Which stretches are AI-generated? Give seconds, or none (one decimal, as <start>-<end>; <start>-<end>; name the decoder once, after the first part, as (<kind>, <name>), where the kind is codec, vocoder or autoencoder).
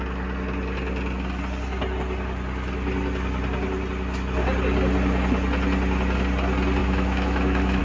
6.8-7.8 (autoencoder, DAC-VAE)